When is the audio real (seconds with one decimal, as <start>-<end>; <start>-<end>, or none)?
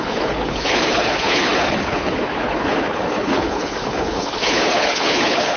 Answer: none